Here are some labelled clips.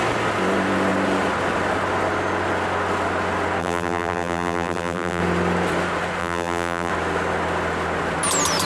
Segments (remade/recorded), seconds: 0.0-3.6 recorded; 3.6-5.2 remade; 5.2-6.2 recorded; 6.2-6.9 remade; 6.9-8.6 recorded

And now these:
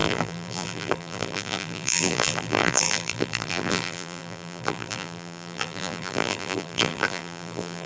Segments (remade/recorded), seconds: 0.0-7.9 remade

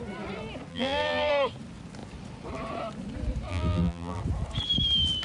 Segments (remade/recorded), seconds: 0.0-0.7 recorded; 0.7-1.3 remade; 1.3-3.5 recorded; 3.5-4.2 remade; 4.2-5.2 recorded

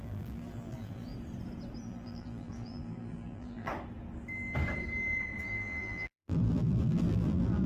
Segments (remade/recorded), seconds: 0.0-1.1 remade; 1.1-1.8 recorded; 1.8-3.7 remade; 3.7-5.4 recorded; 5.4-7.7 remade